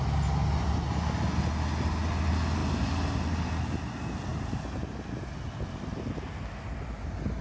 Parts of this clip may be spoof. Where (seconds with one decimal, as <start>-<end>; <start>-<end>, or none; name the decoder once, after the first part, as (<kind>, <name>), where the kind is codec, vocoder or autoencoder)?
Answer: none